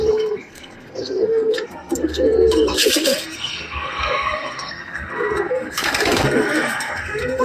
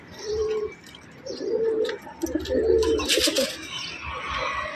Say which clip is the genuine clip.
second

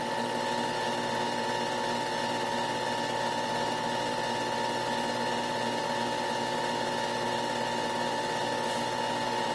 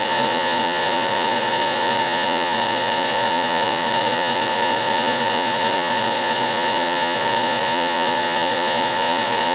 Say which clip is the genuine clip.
first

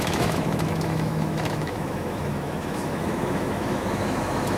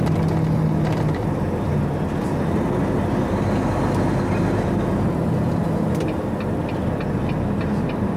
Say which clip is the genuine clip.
second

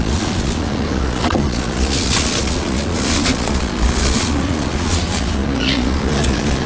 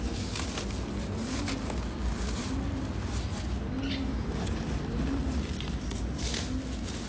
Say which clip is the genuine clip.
second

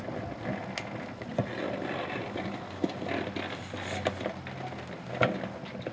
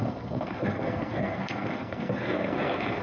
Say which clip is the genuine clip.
first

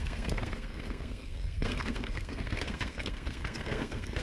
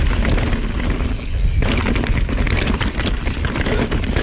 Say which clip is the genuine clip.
second